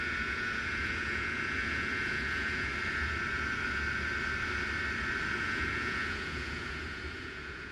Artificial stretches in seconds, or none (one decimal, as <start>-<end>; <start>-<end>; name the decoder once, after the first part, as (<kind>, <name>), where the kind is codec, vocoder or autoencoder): 0.0-2.7 (vocoder, Vocos); 5.4-7.7